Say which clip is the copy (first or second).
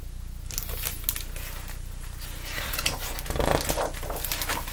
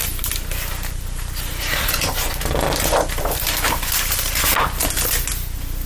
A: second